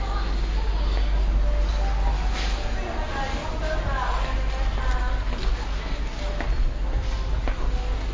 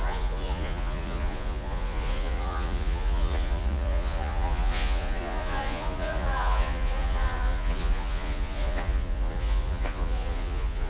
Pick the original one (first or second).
first